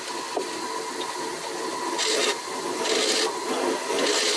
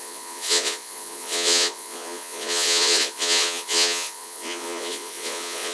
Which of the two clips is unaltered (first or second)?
first